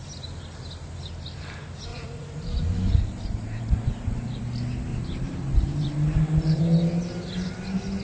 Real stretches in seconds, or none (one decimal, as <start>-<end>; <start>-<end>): 0.0-1.9; 4.4-4.9; 6.6-8.0